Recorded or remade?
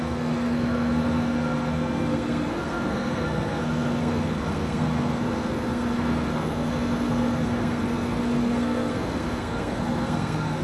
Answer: remade